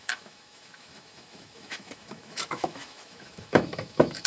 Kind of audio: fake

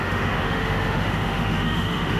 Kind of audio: fake